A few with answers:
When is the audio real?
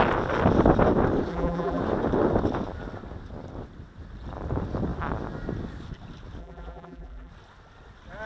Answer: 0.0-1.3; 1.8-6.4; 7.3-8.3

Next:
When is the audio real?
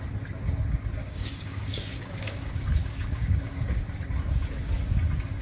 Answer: 0.0-1.0; 3.8-5.4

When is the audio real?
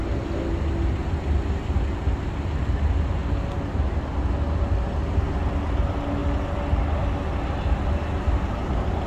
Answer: 0.0-9.1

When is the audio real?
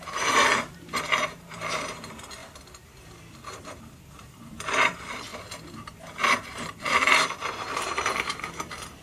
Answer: 2.4-3.8; 5.3-6.2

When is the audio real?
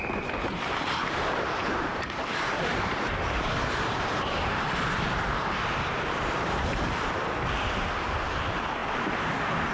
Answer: 8.8-9.7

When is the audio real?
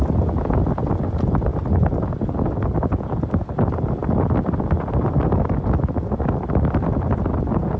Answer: 0.0-7.8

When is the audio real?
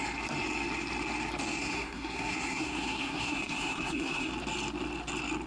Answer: 0.0-1.6; 4.3-5.5